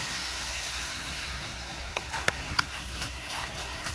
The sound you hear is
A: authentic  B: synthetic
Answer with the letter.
B